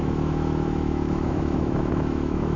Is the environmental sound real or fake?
fake